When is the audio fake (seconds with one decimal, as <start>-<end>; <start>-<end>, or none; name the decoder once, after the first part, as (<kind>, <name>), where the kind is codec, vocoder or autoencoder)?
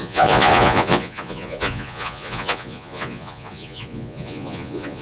0.0-5.0 (vocoder, Vocos)